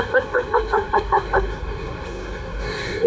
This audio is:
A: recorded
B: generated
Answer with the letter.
B